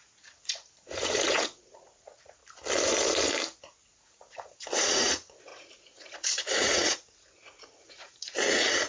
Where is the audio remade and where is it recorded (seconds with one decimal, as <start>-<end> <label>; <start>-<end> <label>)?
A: 0.0-2.4 remade; 2.4-3.6 recorded; 3.6-8.9 remade